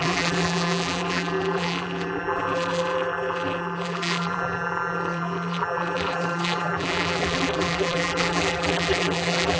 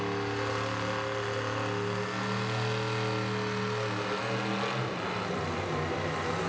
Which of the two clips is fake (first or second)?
first